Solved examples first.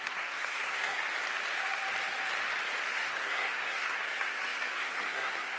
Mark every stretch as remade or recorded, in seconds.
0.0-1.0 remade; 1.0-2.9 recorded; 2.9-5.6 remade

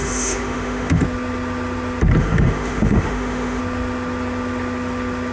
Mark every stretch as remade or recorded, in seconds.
0.0-1.0 remade; 1.0-2.2 recorded; 2.2-3.6 remade; 3.6-5.3 recorded

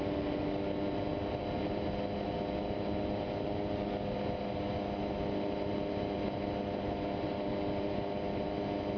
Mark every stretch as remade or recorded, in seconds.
0.0-9.0 recorded

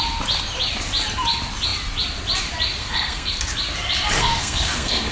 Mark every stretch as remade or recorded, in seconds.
0.0-2.8 recorded; 2.8-3.3 remade; 3.3-4.2 recorded; 4.2-5.1 remade

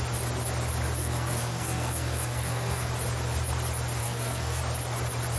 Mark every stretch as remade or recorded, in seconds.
0.0-1.0 recorded; 1.0-2.9 remade; 2.9-4.0 recorded; 4.0-4.6 remade; 4.6-5.4 recorded